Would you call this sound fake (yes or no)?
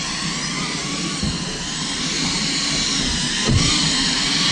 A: no